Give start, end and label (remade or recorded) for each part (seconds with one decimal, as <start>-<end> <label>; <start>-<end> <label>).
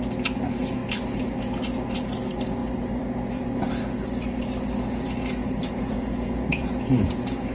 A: 0.0-5.4 recorded; 5.4-7.5 remade